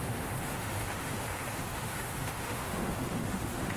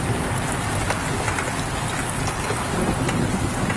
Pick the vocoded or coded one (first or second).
first